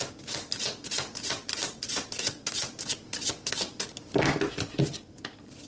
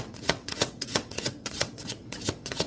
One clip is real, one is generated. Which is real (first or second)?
first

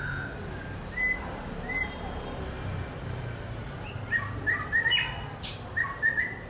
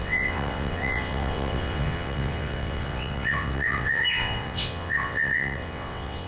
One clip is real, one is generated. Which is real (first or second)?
first